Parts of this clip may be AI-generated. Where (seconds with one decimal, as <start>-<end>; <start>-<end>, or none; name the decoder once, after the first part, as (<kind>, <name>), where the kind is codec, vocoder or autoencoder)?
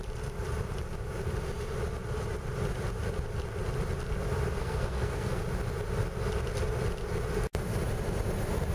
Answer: 4.6-5.4 (codec, SNAC)